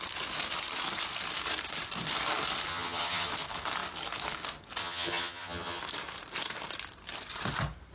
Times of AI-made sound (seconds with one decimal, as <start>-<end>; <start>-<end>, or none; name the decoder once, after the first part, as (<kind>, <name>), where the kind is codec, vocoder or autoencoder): 2.7-3.3 (vocoder, HiFi-GAN); 4.8-5.8